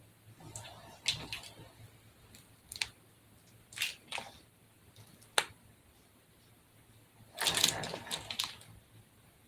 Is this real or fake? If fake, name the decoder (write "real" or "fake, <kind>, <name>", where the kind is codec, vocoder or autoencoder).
real